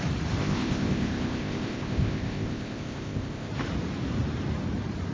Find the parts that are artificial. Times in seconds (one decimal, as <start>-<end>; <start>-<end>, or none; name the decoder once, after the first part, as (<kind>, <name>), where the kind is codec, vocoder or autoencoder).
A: 0.4-3.5 (codec, ZipCodec)

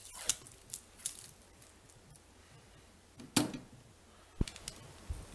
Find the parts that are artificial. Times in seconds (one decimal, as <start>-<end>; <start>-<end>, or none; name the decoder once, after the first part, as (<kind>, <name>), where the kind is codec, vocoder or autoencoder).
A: none

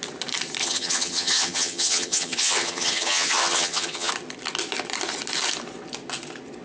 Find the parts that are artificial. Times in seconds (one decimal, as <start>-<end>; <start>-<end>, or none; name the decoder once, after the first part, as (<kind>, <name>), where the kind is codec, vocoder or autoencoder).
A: 0.6-4.1 (vocoder, HiFi-GAN)

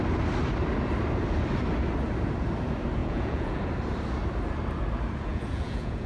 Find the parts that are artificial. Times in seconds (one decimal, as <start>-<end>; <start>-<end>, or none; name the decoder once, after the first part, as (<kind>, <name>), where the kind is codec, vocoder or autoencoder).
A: 3.0-3.6 (vocoder, Vocos); 5.3-6.1

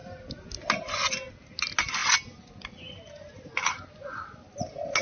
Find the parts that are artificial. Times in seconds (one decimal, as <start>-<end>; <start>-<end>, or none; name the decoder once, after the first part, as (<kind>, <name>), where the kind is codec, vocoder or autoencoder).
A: none

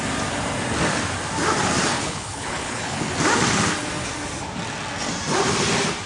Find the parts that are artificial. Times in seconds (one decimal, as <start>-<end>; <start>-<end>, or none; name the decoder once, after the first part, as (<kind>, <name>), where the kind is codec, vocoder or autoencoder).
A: 1.9-3.1 (codec, HILCodec)

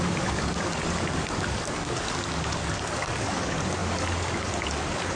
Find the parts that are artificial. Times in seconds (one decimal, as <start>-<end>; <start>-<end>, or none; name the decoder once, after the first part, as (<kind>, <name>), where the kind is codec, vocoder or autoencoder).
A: 0.0-5.2 (codec, DAC)